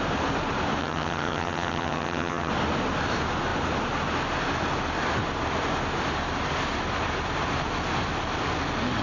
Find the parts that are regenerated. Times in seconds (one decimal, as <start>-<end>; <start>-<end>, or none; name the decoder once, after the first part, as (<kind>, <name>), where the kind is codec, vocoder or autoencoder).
0.8-2.5 (vocoder, HiFi-GAN)